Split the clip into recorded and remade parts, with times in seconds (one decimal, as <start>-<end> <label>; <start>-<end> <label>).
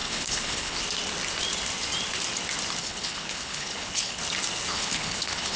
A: 0.0-0.8 remade; 0.8-2.8 recorded; 2.8-4.2 remade; 4.2-4.7 recorded; 4.7-5.6 remade